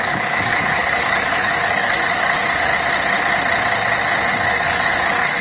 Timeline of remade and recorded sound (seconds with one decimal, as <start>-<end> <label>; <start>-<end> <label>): 0.0-2.7 remade; 2.7-4.3 recorded; 4.3-5.4 remade